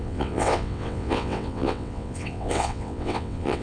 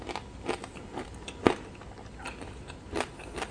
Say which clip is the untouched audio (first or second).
second